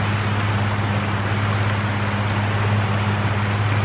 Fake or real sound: real